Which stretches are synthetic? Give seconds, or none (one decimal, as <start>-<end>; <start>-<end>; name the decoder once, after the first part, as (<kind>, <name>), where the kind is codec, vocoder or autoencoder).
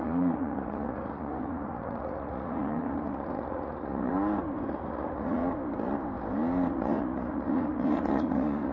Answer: 0.0-4.1 (vocoder, Vocos); 4.7-5.4; 6.7-8.7